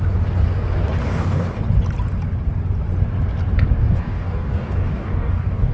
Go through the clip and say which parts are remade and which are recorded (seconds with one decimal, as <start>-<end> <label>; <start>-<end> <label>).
0.0-1.0 recorded; 1.0-1.6 remade; 1.6-3.8 recorded; 3.8-5.7 remade